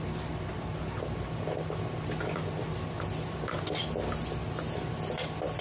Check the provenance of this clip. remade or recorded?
recorded